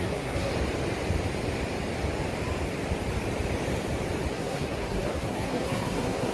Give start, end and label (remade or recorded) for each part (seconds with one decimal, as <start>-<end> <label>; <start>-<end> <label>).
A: 0.0-0.5 remade; 0.5-4.3 recorded; 4.3-6.3 remade